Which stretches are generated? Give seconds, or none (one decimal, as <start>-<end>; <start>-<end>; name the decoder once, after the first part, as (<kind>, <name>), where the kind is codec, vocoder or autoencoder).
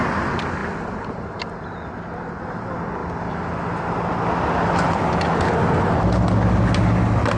3.0-3.9 (vocoder, BigVGAN v2)